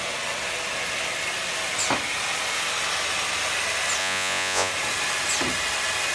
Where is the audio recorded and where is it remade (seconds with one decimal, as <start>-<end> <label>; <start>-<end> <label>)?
0.0-4.0 recorded; 4.0-4.7 remade; 4.7-6.1 recorded